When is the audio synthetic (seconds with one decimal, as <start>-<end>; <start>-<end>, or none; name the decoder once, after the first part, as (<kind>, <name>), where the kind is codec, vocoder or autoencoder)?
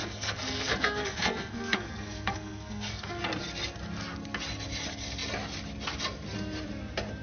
0.0-3.2 (codec, SNAC)